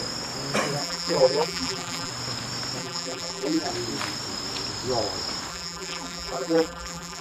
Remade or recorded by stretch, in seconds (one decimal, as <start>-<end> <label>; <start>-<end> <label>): 0.0-0.8 recorded; 0.8-2.1 remade; 2.1-2.8 recorded; 2.8-3.7 remade; 3.7-5.5 recorded; 5.5-7.2 remade